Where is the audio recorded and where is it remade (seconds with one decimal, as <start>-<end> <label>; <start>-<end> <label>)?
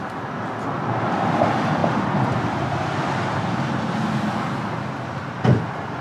0.0-6.0 recorded